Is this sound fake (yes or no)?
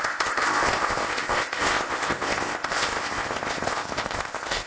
yes